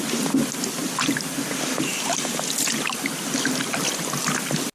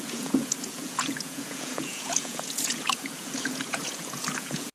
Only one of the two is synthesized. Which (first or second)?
second